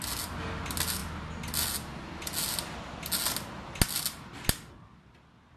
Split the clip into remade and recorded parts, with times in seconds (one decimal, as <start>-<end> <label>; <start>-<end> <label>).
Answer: 0.0-5.6 recorded